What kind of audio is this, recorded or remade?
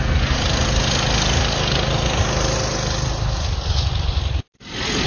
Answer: recorded